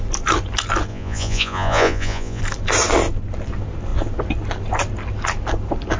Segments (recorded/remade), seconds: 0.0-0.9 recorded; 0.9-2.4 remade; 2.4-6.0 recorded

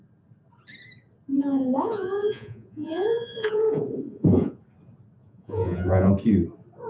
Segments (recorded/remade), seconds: 0.0-1.3 recorded; 1.3-4.6 remade; 4.6-5.2 recorded; 5.2-6.1 remade; 6.1-6.9 recorded

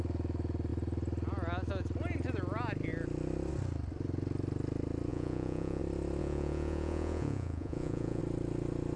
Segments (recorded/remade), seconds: 0.0-5.1 recorded; 5.1-5.8 remade; 5.8-6.2 recorded; 6.2-8.2 remade; 8.2-9.0 recorded

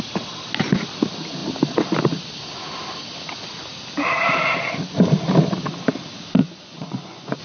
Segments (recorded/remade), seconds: 0.0-6.4 recorded; 6.4-7.4 remade

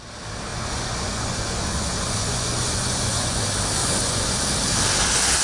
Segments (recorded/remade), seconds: 0.0-0.5 recorded; 0.5-3.4 remade; 3.4-3.8 recorded; 3.8-4.4 remade; 4.4-5.4 recorded

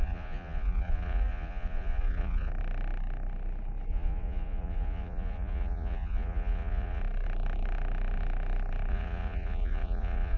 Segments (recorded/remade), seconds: 0.0-2.5 remade; 2.5-3.9 recorded; 3.9-7.0 remade; 7.0-8.9 recorded; 8.9-10.4 remade